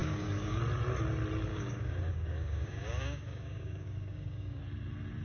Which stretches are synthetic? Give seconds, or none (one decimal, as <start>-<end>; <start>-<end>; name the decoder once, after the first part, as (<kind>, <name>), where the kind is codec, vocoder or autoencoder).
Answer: 0.0-0.6 (codec, DAC); 1.5-4.6

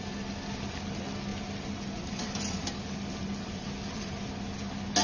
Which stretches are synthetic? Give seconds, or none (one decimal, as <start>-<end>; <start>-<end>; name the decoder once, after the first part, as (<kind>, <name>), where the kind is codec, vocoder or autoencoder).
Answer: 1.3-4.3 (vocoder, BigVGAN v2)